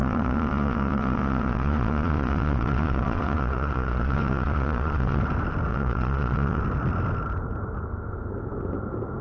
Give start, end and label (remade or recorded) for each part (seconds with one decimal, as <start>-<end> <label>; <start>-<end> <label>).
0.0-5.2 remade; 5.2-5.7 recorded; 5.7-6.6 remade; 6.6-9.2 recorded